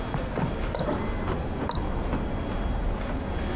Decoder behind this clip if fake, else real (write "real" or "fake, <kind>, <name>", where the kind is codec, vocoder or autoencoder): real